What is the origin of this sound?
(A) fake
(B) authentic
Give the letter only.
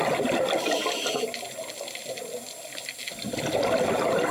B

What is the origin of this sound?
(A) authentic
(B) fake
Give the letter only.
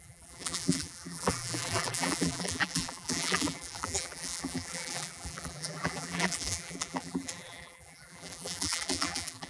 B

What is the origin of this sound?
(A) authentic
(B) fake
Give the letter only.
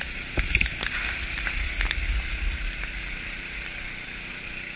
A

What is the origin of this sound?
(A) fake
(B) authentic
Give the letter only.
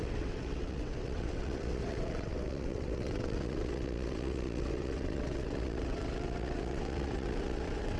A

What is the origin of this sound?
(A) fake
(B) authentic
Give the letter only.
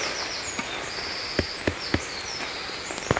B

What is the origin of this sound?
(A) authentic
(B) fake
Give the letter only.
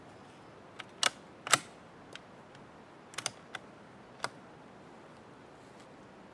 A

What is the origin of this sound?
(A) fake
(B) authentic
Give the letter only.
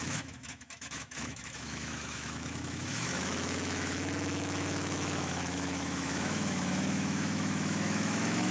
A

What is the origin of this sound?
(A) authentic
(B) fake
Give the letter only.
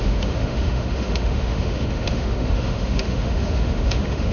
B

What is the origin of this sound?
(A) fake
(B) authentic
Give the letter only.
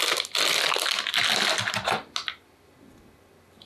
B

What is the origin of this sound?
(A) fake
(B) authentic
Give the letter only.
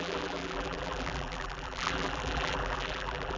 A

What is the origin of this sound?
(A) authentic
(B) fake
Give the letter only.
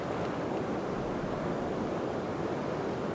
A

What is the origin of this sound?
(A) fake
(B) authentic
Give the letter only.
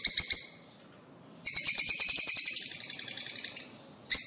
B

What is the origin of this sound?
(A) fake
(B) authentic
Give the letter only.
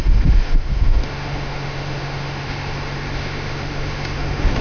A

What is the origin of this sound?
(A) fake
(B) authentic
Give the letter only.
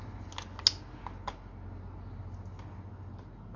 B